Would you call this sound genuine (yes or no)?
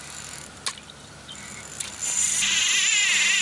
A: yes